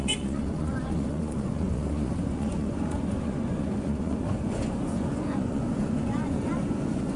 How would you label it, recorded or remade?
remade